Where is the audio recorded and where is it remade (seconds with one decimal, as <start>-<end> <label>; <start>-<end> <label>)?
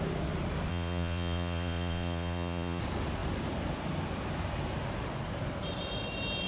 0.0-0.7 recorded; 0.7-2.8 remade; 2.8-6.5 recorded